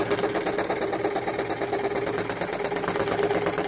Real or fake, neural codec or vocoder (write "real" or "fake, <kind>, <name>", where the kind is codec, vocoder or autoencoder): real